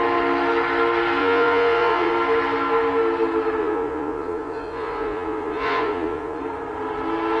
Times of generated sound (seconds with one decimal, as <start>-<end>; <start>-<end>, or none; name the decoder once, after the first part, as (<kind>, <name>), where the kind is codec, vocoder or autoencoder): 1.2-2.1 (vocoder, Vocos); 3.6-6.4